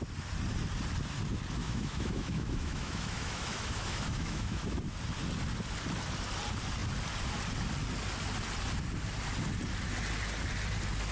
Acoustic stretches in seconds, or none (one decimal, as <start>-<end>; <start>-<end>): 0.0-1.6; 4.8-11.1